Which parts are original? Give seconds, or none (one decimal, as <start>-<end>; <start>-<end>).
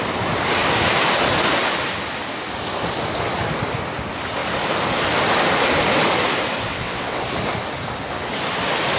0.0-6.7; 7.2-9.0